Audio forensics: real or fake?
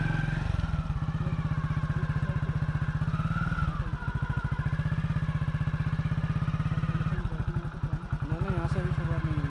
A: real